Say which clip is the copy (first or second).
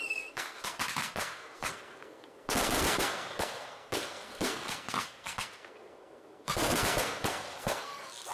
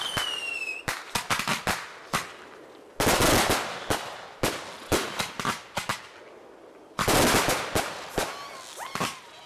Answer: first